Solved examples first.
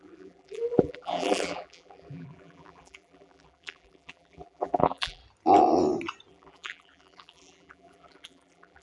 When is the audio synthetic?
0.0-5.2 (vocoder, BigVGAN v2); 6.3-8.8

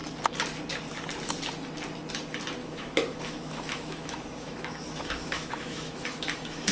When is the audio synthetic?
2.6-6.7 (autoencoder, DAC-VAE)

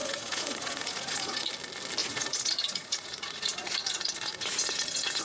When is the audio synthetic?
0.0-1.5 (vocoder, Vocos); 2.0-5.2

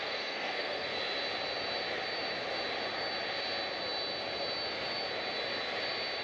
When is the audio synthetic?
0.0-1.0 (codec, SNAC)

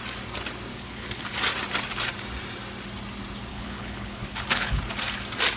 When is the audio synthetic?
0.7-1.2 (codec, HILCodec); 3.5-4.8